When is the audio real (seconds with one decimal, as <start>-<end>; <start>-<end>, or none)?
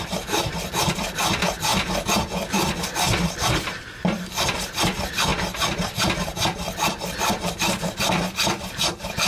1.7-3.5; 5.3-8.0